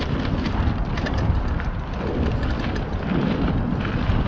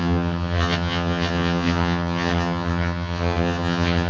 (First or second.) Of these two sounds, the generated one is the second